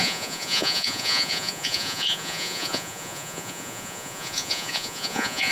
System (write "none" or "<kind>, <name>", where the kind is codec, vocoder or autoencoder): vocoder, Vocos